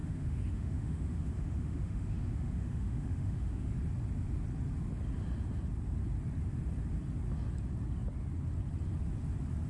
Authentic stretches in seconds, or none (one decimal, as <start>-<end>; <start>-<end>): 3.7-9.7